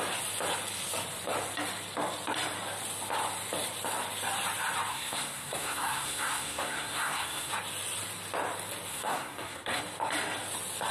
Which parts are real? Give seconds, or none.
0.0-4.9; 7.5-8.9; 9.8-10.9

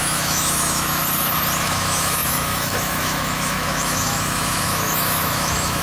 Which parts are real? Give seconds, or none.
1.0-1.6